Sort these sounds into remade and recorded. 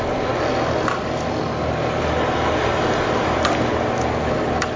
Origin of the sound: recorded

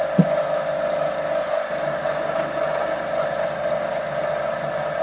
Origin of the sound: recorded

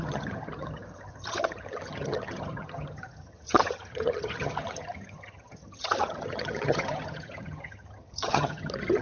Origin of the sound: remade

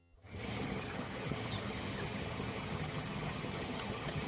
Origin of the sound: remade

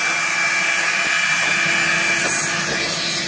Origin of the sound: recorded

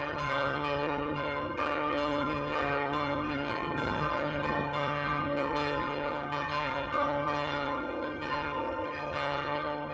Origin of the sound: remade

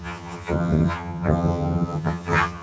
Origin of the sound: remade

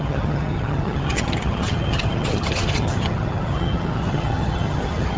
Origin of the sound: remade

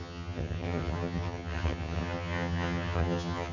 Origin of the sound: remade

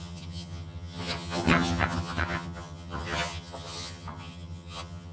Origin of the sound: remade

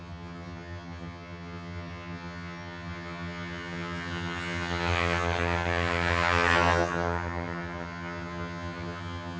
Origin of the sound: remade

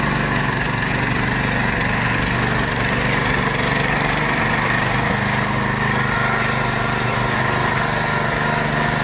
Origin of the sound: recorded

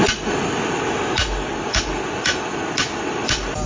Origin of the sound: recorded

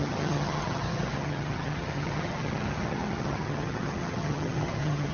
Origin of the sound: remade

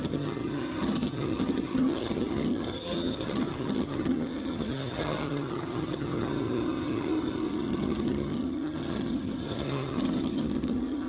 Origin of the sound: remade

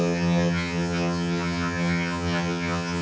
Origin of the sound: remade